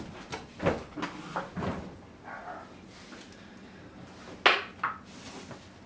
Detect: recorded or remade recorded